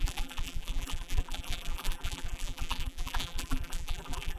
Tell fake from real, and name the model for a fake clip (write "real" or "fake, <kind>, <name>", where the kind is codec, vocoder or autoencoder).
fake, vocoder, BigVGAN v2